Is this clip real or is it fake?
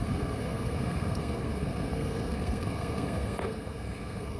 fake